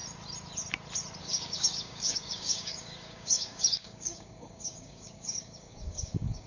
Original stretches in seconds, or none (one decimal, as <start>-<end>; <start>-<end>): 0.0-1.2